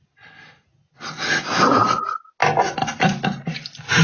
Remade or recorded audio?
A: recorded